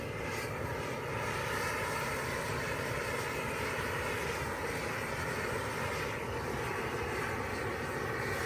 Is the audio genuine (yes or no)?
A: yes